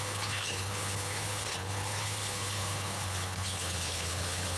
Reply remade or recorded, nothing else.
remade